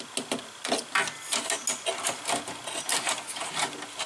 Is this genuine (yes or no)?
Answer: yes